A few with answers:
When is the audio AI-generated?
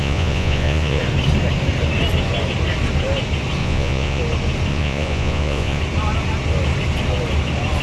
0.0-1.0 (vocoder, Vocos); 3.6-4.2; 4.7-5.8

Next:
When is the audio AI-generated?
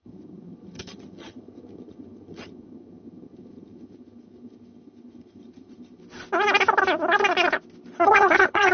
0.0-6.0 (vocoder, HiFi-GAN); 8.0-8.7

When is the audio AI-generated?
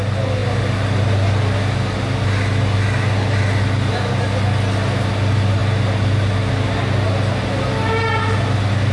none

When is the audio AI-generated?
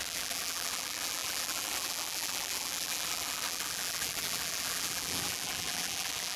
0.0-6.4 (vocoder, BigVGAN v2)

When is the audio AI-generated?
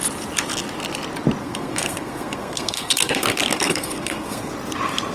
1.4-4.5 (codec, SNAC)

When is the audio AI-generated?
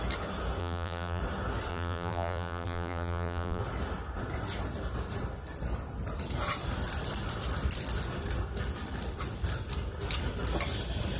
0.6-1.2 (vocoder, BigVGAN v2); 1.7-3.6